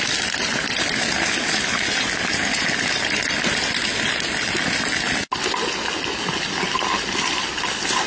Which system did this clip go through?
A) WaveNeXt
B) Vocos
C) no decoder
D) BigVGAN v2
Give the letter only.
C